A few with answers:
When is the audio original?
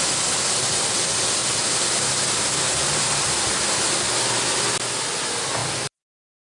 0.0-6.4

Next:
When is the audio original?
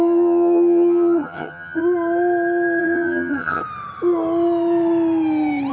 1.8-2.8; 3.6-5.7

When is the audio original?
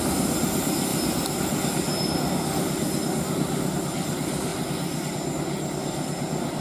0.0-6.6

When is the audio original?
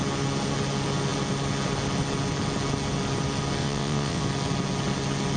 0.0-3.6; 4.2-5.4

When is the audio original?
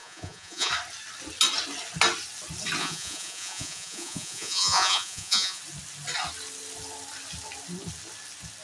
0.7-2.8; 5.6-8.6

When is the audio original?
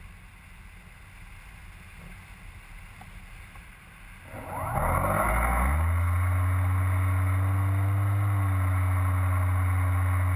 0.0-10.4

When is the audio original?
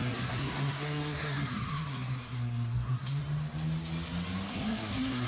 3.2-4.5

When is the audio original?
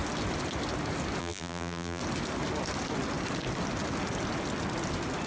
0.0-1.2; 2.0-5.3